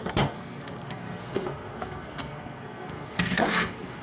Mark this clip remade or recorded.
remade